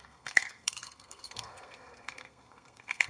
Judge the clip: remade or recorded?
remade